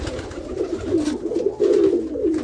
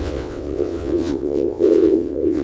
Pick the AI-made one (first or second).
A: second